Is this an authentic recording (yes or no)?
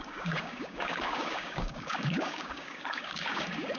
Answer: no